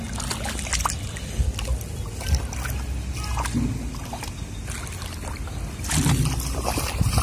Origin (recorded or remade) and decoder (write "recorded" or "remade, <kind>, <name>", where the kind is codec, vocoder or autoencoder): recorded